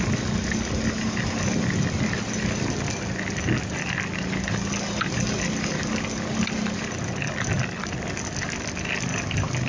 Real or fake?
real